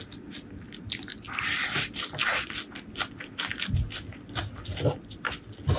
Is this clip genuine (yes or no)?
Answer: yes